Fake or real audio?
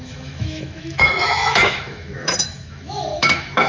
fake